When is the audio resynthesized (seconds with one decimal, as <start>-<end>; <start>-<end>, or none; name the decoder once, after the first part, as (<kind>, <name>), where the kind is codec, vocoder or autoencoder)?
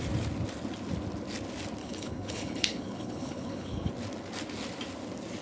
1.8-3.9 (codec, HILCodec)